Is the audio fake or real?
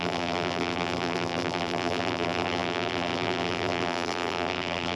fake